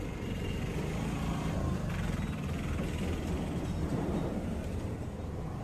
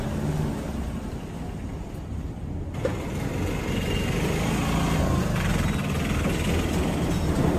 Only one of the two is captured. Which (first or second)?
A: second